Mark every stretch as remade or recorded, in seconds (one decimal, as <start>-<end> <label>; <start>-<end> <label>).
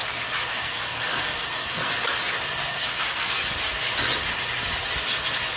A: 0.0-0.5 recorded; 0.5-1.9 remade; 1.9-2.7 recorded; 2.7-3.4 remade; 3.4-5.6 recorded